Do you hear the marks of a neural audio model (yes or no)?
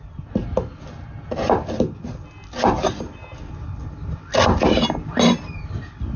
no